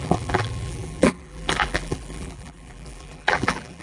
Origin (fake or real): fake